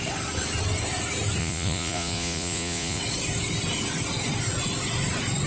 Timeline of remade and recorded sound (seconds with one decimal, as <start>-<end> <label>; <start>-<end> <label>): 0.0-1.4 recorded; 1.4-3.0 remade; 3.0-5.5 recorded